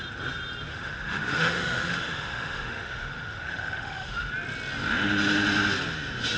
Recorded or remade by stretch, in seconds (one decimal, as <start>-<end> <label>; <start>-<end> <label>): 0.0-0.7 recorded; 0.7-4.3 remade; 4.3-6.4 recorded